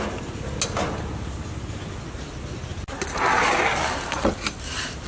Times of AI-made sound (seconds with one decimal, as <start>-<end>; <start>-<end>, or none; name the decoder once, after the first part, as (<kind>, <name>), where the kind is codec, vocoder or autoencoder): none

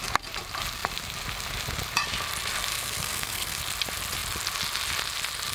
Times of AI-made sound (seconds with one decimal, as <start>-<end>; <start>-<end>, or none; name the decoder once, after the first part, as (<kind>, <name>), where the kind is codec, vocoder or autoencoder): 2.7-3.6 (codec, SNAC)

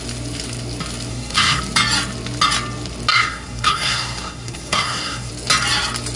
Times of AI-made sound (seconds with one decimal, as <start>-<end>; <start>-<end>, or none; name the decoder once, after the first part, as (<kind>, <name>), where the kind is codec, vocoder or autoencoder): 1.1-1.6 (codec, SNAC); 3.1-5.3

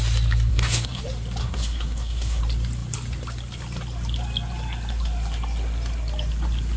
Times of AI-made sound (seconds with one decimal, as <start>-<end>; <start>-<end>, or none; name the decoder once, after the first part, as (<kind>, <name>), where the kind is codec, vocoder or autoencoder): 0.5-1.0 (codec, SNAC); 1.4-2.4

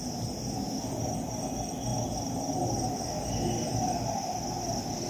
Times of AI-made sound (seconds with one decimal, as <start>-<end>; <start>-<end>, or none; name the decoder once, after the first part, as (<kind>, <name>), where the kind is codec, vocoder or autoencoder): none

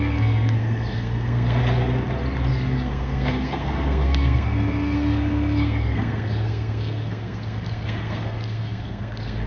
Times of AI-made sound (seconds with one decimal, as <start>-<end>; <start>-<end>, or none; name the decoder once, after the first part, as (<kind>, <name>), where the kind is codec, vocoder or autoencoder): 0.0-1.6 (codec, SNAC); 2.5-9.5

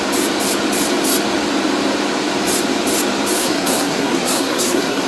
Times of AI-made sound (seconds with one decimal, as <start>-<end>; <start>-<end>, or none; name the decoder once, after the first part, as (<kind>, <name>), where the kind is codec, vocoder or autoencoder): 3.4-5.1 (codec, SNAC)

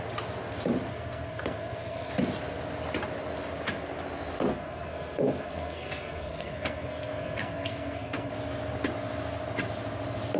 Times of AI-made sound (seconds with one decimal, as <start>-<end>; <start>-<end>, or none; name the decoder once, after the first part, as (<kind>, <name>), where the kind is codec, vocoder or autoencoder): 0.9-2.1 (codec, SNAC); 4.5-8.3